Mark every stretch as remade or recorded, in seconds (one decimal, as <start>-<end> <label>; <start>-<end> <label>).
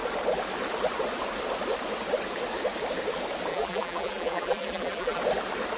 0.0-3.5 recorded; 3.5-5.2 remade; 5.2-5.8 recorded